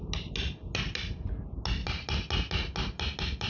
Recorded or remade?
recorded